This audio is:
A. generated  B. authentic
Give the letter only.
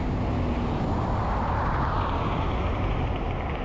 B